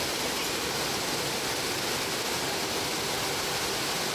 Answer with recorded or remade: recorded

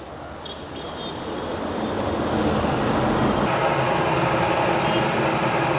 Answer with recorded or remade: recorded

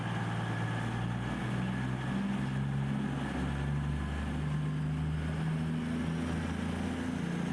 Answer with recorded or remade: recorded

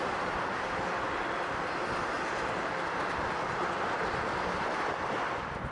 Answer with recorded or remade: recorded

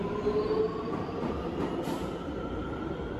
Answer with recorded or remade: recorded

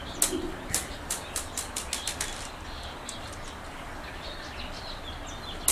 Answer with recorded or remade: recorded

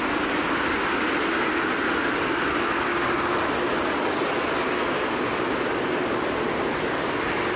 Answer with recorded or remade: recorded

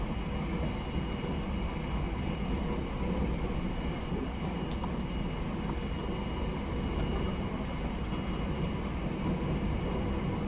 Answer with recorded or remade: recorded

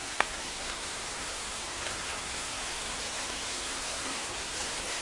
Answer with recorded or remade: remade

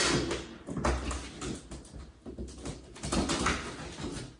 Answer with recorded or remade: recorded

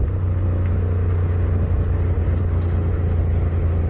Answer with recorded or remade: recorded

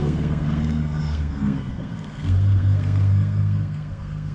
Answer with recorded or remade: remade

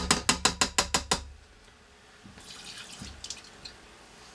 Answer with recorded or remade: recorded